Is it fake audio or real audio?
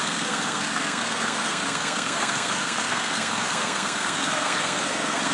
fake